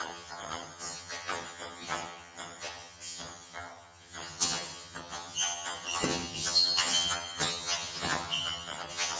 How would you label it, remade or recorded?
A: remade